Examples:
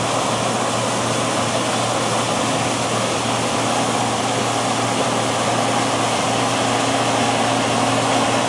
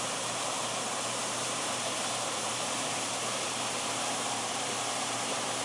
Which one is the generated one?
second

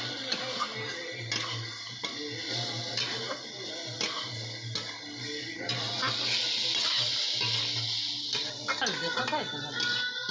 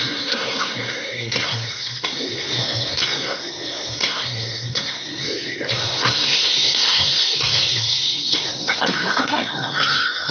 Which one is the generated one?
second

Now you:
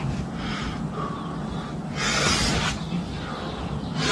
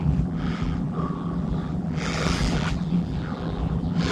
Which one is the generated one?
second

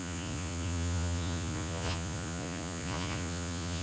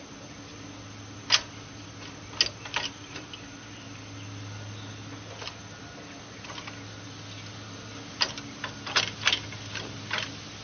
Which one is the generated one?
first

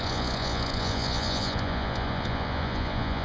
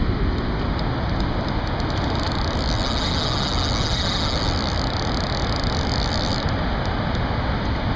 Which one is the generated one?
first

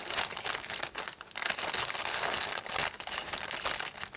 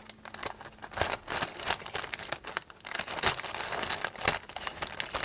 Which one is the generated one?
second